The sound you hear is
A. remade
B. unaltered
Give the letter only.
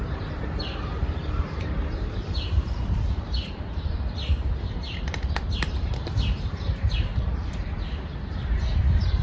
A